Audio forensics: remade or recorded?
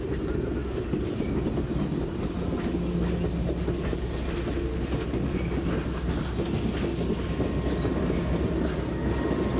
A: recorded